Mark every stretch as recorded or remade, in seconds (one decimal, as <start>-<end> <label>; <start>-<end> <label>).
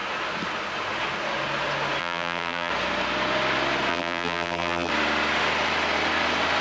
0.0-2.0 recorded; 2.0-2.7 remade; 2.7-3.9 recorded; 3.9-4.9 remade; 4.9-6.6 recorded